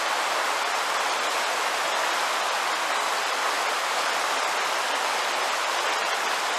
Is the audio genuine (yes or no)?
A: yes